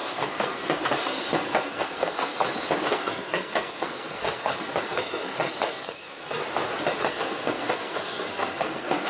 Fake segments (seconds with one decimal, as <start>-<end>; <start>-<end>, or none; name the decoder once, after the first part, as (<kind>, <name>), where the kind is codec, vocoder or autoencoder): 0.0-2.4 (codec, SNAC); 2.9-6.4; 7.0-9.1